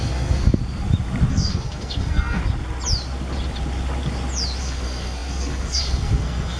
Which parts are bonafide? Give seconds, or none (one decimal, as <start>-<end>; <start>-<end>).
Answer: 0.6-1.3; 2.4-4.6